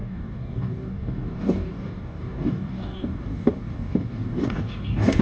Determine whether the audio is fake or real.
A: fake